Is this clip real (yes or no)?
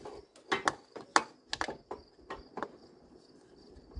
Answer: yes